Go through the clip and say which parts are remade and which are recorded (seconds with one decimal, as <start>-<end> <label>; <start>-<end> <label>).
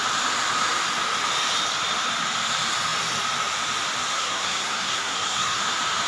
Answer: 0.0-4.1 recorded; 4.1-5.6 remade; 5.6-6.1 recorded